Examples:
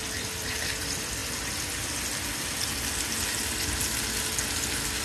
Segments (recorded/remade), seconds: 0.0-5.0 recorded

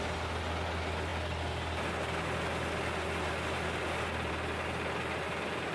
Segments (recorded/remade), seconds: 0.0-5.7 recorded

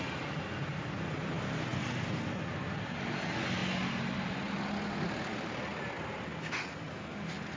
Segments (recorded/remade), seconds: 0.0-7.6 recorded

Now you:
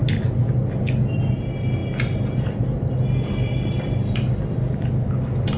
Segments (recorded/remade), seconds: 0.0-5.6 recorded

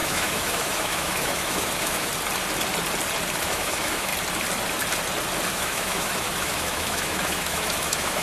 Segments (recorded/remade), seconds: 0.0-2.1 remade; 2.1-3.4 recorded; 3.4-4.1 remade; 4.1-5.5 recorded; 5.5-8.2 remade

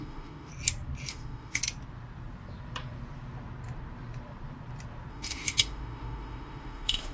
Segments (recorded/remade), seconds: 0.0-0.5 remade; 0.5-1.1 recorded; 1.1-1.6 remade; 1.6-5.1 recorded; 5.1-7.1 remade

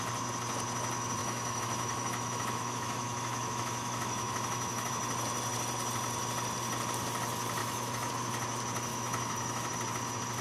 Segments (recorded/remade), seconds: 0.0-1.2 recorded; 1.2-4.9 remade; 4.9-7.6 recorded; 7.6-8.1 remade; 8.1-8.9 recorded; 8.9-9.7 remade; 9.7-10.4 recorded

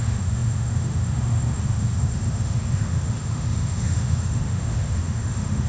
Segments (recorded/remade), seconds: 0.0-5.7 remade